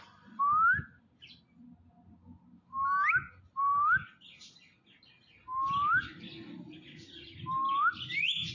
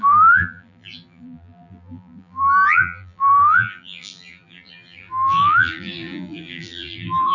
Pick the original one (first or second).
first